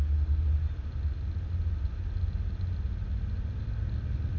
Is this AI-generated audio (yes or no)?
no